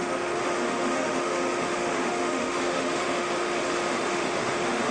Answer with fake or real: fake